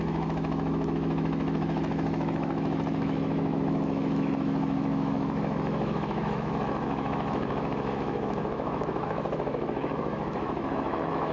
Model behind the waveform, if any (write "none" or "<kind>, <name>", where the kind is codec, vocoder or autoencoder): autoencoder, DAC-VAE